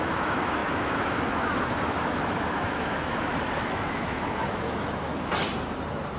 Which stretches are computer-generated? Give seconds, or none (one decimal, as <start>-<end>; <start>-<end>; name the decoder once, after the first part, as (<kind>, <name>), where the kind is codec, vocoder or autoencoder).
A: 0.0-5.3 (autoencoder, DAC-VAE)